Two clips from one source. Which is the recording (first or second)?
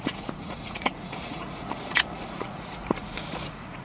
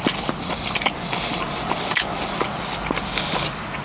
second